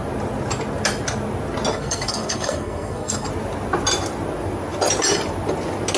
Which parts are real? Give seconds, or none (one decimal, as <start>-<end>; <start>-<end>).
0.0-1.7; 3.3-6.0